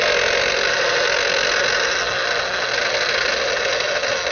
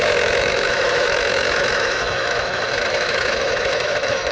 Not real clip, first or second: second